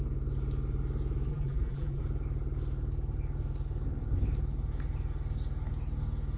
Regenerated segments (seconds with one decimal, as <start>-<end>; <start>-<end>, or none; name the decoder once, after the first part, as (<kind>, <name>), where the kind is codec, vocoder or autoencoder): 1.3-2.0 (vocoder, BigVGAN v2)